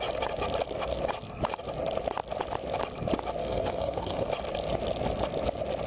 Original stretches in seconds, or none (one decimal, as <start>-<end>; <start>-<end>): 0.0-3.4; 4.3-5.9